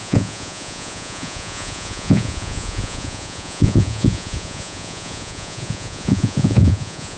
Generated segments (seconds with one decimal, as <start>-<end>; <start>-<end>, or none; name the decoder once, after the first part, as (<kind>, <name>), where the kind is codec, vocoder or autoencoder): 0.0-7.2 (vocoder, Vocos)